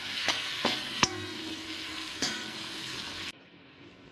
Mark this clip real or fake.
fake